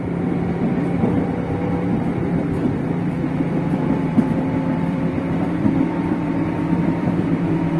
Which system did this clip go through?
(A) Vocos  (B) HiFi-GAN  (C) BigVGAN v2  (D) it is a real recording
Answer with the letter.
C